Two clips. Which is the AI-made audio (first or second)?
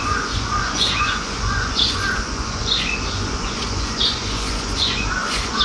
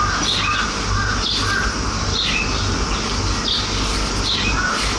first